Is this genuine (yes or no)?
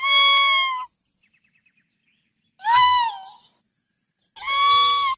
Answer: yes